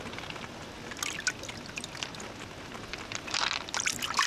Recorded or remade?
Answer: recorded